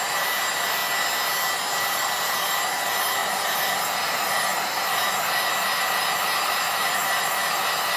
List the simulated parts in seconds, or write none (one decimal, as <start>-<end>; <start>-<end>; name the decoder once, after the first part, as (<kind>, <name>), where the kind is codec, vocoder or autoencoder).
0.0-0.8 (vocoder, BigVGAN v2); 1.8-8.0